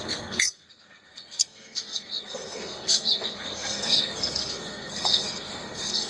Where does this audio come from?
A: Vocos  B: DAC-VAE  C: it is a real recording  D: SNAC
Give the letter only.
D